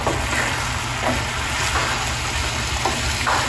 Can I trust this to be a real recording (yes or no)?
yes